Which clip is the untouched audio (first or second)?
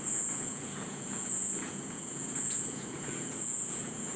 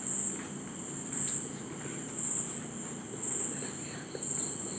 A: second